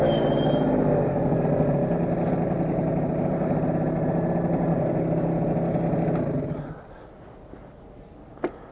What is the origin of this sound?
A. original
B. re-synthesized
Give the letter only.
A